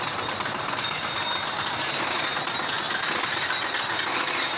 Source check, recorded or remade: recorded